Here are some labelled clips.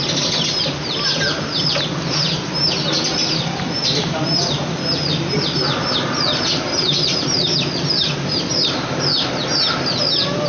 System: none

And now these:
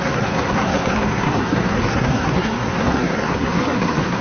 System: codec, SNAC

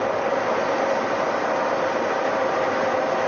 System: none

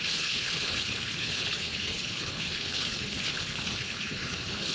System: codec, HILCodec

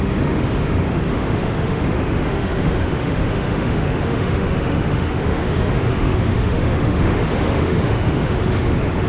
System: autoencoder, DAC-VAE